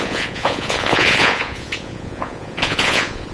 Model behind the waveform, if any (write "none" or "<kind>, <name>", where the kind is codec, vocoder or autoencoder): vocoder, Vocos